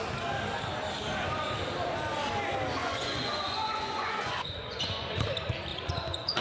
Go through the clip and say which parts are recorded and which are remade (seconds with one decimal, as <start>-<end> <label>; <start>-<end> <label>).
0.0-2.8 recorded; 2.8-5.2 remade; 5.2-5.7 recorded; 5.7-6.4 remade